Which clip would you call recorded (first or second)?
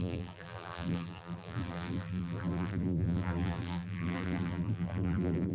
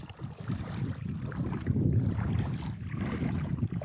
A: second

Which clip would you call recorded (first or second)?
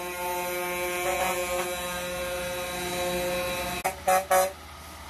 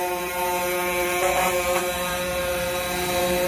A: first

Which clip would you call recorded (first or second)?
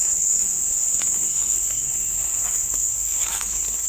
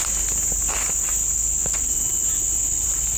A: second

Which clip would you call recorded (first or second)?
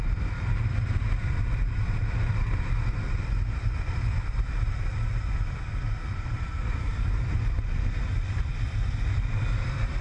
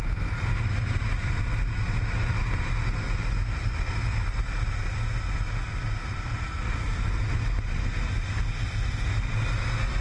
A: second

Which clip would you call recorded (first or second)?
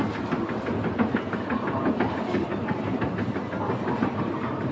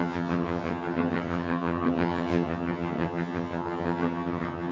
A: first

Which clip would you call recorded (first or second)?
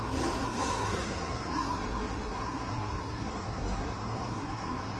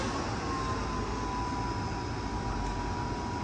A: second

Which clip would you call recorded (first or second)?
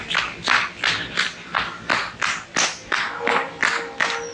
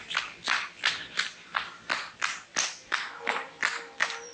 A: first